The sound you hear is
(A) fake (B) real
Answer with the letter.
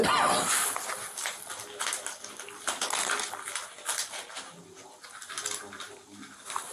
B